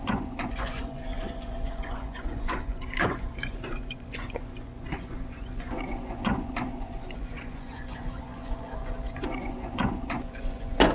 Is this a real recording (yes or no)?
no